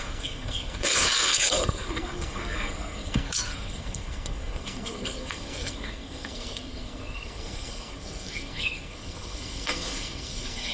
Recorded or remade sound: remade